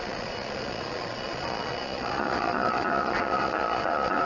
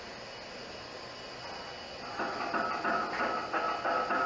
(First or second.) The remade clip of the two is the first